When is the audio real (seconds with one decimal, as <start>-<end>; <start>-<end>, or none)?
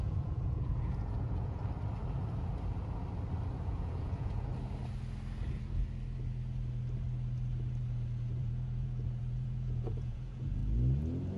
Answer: 1.6-3.6; 4.5-8.4; 10.6-11.4